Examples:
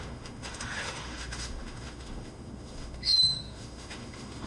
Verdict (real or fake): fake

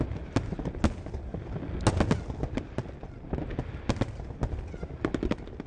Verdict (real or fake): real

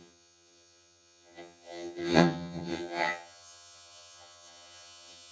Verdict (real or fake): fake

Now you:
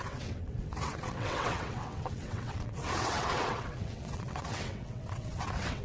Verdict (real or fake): fake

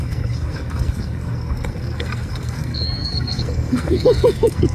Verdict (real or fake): fake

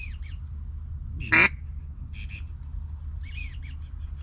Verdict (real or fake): real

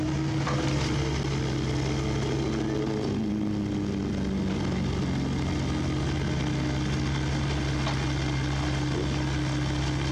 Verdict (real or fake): real